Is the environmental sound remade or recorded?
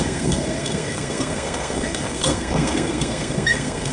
remade